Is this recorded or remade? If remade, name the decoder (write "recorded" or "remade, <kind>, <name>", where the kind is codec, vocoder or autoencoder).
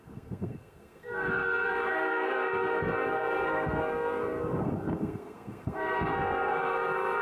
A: remade, codec, SNAC